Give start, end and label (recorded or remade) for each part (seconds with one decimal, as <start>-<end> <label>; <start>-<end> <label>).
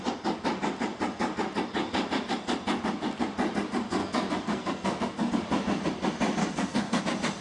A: 0.0-4.0 recorded; 4.0-5.3 remade; 5.3-6.4 recorded; 6.4-7.0 remade; 7.0-7.4 recorded